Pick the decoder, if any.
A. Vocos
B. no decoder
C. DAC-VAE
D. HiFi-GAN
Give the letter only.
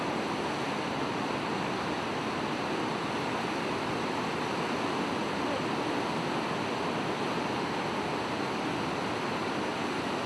B